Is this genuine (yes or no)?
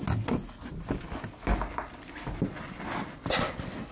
yes